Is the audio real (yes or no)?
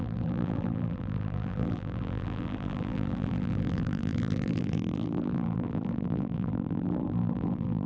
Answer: no